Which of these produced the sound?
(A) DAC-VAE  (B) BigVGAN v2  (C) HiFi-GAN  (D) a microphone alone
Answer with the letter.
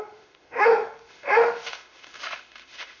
A